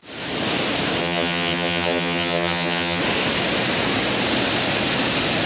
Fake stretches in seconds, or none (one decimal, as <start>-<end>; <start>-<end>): 1.0-3.0